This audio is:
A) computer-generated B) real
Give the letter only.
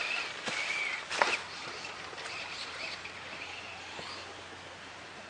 B